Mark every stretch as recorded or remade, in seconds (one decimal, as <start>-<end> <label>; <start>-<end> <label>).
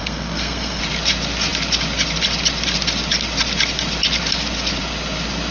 0.0-0.8 remade; 0.8-5.5 recorded